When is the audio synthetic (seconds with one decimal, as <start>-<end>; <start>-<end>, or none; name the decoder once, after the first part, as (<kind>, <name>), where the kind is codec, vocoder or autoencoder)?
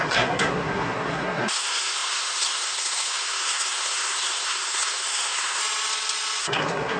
0.0-5.6 (codec, SNAC); 6.4-7.0